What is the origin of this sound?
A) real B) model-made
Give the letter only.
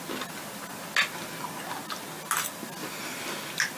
A